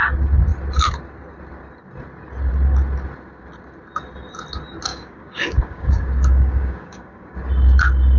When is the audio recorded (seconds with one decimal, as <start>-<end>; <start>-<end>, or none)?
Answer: 0.0-4.9; 7.5-8.2

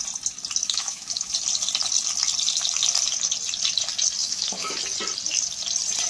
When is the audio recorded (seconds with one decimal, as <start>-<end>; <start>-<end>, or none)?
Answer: 0.0-0.6; 1.3-4.2; 4.8-6.1

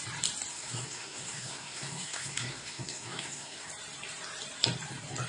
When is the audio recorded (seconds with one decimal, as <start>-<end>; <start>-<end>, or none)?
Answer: 0.0-0.5; 3.7-5.3

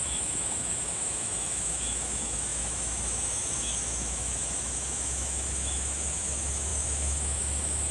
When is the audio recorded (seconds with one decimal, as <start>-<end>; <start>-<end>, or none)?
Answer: none

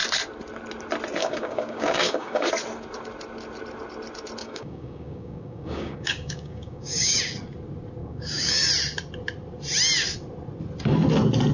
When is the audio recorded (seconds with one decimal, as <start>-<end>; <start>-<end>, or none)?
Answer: 0.0-1.2; 2.5-4.4; 7.2-8.0; 8.7-11.5

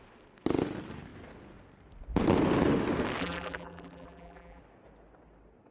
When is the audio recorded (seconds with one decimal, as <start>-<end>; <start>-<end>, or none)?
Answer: 0.0-3.2; 4.6-5.7

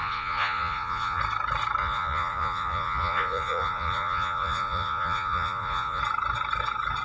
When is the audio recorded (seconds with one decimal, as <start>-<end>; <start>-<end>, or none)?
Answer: 1.2-1.8; 6.0-7.0